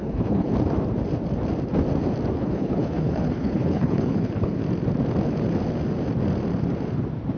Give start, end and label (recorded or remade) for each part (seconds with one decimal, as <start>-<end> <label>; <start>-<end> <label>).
0.0-0.5 remade; 0.5-2.3 recorded; 2.3-4.6 remade; 4.6-7.4 recorded